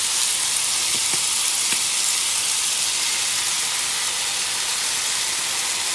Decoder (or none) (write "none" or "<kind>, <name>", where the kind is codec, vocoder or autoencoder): none